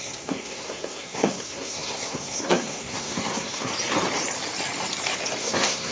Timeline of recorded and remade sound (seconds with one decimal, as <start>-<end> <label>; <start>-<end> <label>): 0.0-3.7 remade; 3.7-5.4 recorded; 5.4-5.9 remade